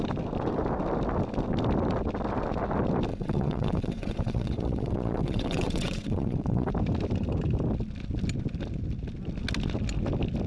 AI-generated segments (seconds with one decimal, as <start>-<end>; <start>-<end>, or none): 3.1-6.7